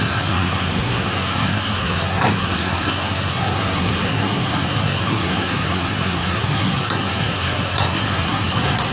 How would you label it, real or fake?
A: fake